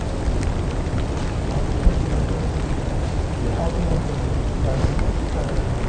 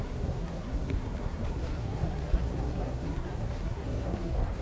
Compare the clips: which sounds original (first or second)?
first